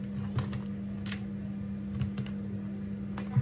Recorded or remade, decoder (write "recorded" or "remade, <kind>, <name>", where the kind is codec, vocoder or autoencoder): recorded